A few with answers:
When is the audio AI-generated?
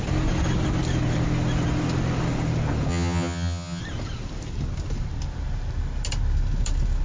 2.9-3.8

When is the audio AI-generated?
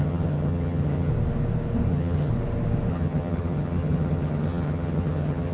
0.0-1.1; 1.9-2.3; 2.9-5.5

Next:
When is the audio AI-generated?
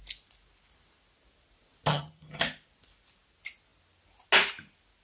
1.9-2.4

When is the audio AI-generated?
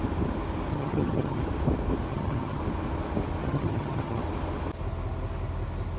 0.7-1.4; 2.1-2.6; 3.4-4.2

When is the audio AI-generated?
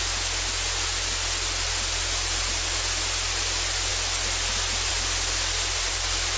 none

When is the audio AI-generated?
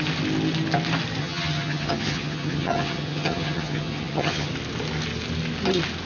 1.2-4.5